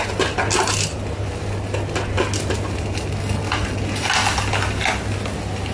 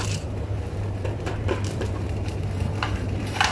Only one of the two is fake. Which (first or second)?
second